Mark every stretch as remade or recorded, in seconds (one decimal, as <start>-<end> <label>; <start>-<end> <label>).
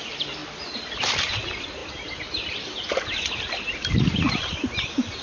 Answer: 0.0-5.2 recorded